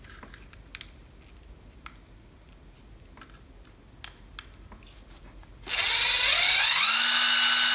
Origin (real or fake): real